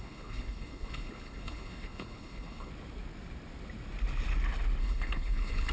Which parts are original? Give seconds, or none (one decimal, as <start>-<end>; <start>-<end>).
2.7-4.8